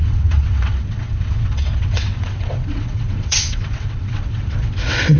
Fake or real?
fake